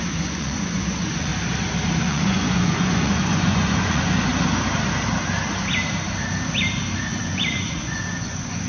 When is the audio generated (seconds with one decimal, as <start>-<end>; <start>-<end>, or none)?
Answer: 0.0-1.3; 2.0-4.3; 7.2-8.7